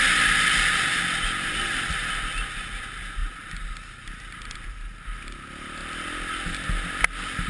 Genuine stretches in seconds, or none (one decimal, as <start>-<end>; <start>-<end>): 0.0-7.5